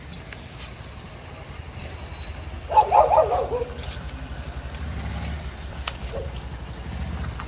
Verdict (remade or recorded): recorded